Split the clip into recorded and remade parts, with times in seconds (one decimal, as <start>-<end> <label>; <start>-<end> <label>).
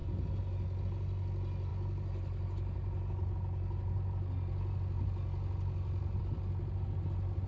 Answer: 0.0-7.5 recorded